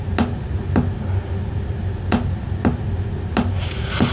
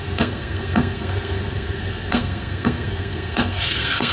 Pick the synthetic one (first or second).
second